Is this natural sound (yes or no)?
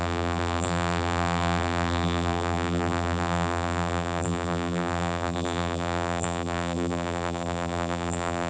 no